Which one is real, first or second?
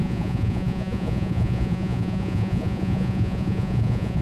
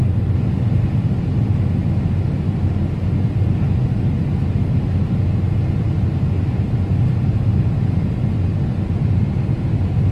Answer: second